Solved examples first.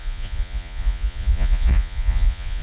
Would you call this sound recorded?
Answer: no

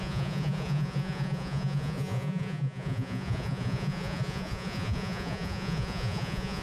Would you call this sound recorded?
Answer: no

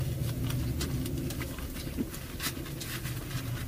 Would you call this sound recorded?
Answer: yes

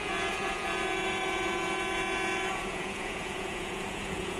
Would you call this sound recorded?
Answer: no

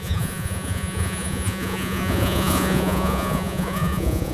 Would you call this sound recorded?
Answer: no